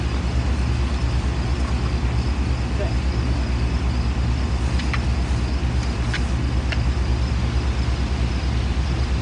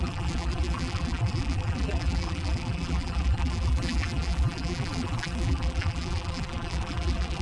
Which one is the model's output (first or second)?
second